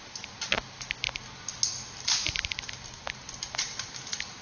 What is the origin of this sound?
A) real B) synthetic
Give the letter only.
A